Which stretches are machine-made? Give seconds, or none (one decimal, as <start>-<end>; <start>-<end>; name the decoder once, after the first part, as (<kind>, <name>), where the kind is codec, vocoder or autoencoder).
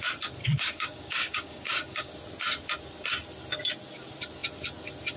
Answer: 0.4-2.1 (codec, DAC)